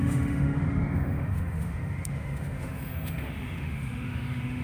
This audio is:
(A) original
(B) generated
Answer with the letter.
B